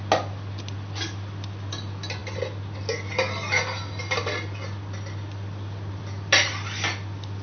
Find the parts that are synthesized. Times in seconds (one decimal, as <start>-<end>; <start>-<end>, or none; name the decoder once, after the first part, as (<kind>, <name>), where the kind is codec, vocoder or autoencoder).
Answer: none